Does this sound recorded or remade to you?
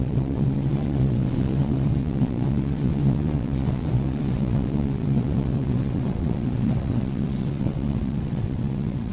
remade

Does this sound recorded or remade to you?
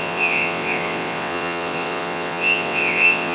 remade